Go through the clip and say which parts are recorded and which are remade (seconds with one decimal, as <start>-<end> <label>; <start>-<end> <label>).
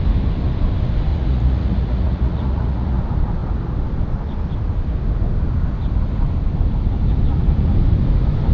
0.0-1.1 recorded; 1.1-3.0 remade; 3.0-8.5 recorded